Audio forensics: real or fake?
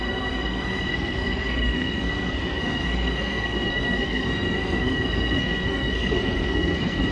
fake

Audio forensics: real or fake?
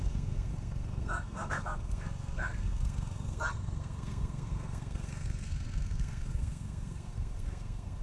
fake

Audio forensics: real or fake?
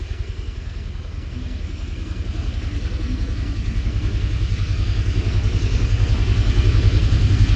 fake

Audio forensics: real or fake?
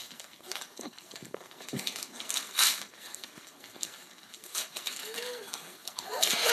fake